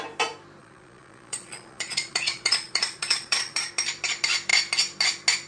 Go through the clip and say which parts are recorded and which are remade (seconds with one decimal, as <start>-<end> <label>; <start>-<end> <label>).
0.0-0.6 recorded; 0.6-3.7 remade; 3.7-5.5 recorded